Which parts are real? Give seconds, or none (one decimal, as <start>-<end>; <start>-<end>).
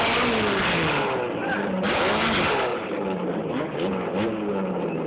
0.0-1.4; 2.0-2.7; 3.6-5.1